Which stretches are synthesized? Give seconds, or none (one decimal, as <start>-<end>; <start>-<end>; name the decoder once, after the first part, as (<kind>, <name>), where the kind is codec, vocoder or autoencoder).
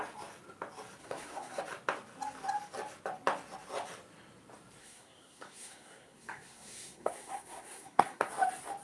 1.0-1.6 (codec, SNAC); 4.8-8.3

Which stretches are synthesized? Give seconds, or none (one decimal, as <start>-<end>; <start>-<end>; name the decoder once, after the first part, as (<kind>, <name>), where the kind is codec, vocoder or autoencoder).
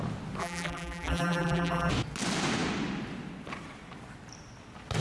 0.4-1.9 (vocoder, BigVGAN v2)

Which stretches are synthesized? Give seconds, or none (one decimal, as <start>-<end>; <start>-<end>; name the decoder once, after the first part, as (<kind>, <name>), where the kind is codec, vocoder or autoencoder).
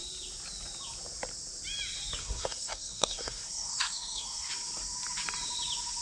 2.2-4.5 (codec, SNAC)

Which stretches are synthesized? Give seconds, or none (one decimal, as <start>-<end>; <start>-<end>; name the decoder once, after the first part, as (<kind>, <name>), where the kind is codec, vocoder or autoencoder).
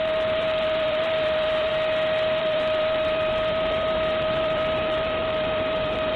0.0-1.7 (vocoder, BigVGAN v2); 2.4-6.2